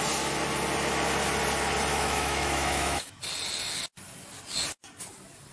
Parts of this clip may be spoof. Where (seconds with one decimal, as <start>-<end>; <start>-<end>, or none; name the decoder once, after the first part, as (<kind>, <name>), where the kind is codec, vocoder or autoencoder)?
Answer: 1.9-3.2 (autoencoder, DAC-VAE)